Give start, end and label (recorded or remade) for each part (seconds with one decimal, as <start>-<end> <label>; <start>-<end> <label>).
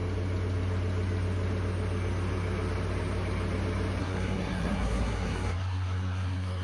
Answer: 0.0-4.0 recorded; 4.0-6.6 remade